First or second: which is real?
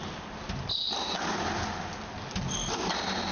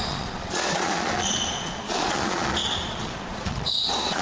first